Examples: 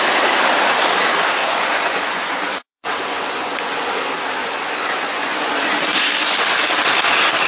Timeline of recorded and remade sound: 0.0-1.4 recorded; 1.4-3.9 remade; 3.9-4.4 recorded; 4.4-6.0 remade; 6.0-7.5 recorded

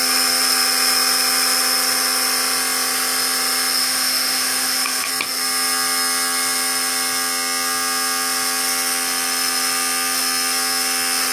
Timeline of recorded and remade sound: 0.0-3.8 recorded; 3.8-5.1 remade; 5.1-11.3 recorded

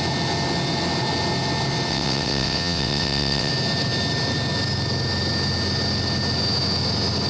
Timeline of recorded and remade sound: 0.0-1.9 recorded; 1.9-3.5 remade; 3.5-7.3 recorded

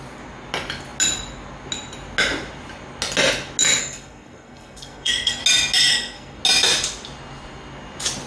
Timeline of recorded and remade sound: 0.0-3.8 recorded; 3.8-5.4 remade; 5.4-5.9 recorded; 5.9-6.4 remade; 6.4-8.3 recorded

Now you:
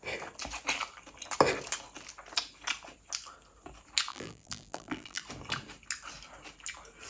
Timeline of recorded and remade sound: 0.0-4.1 recorded; 4.1-5.2 remade; 5.2-7.1 recorded

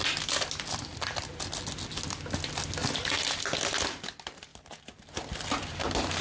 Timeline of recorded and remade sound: 0.0-4.5 recorded; 4.5-6.2 remade